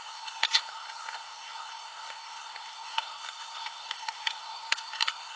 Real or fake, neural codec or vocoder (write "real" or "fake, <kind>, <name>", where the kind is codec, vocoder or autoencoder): fake, codec, SNAC